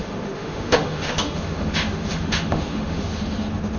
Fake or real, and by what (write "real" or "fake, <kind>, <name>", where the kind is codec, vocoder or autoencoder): fake, autoencoder, DAC-VAE